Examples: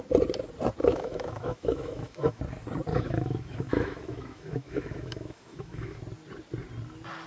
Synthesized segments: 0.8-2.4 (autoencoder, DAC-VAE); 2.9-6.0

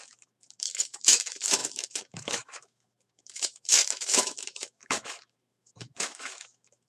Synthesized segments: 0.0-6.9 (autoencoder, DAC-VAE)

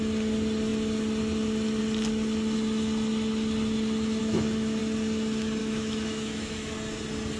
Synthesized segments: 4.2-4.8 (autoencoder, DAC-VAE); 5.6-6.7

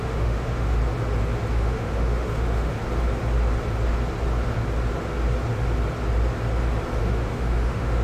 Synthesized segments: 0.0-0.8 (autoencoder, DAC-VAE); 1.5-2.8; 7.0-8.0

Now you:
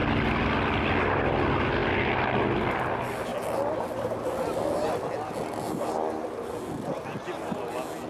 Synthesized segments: none